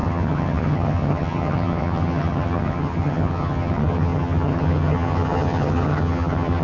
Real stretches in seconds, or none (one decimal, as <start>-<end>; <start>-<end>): none